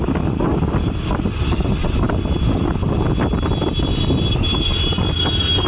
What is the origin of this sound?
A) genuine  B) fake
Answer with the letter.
A